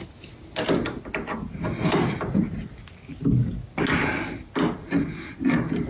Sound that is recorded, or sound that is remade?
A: recorded